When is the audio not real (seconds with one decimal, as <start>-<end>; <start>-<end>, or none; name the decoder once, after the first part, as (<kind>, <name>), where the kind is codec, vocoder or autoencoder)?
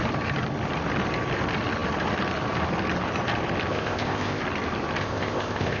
3.7-4.4 (codec, ZipCodec); 5.0-5.8